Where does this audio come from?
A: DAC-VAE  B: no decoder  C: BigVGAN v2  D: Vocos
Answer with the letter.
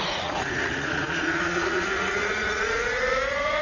D